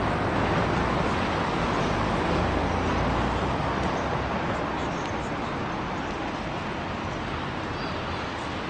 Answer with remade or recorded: recorded